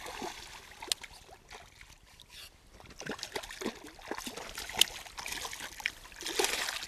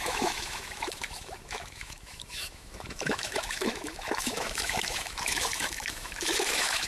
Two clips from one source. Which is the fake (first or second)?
second